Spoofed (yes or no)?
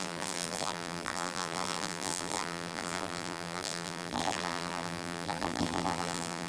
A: yes